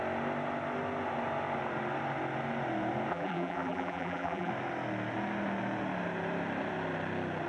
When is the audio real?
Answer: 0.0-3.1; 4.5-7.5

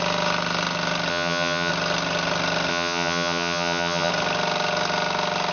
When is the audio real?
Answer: 0.0-1.1; 1.7-2.7; 4.1-5.5

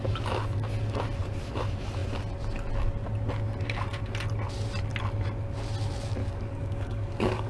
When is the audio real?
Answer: 0.0-6.2

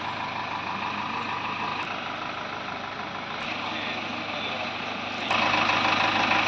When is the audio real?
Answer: 0.0-6.5

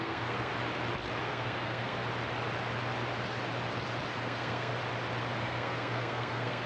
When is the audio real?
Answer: 0.5-1.2; 2.0-4.2; 4.7-5.4